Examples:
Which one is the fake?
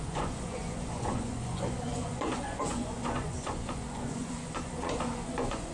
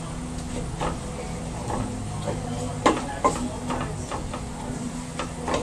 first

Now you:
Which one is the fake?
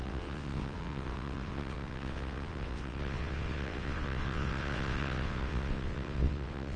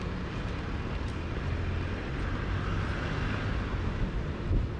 first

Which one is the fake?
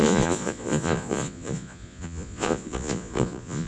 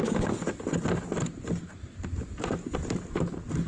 first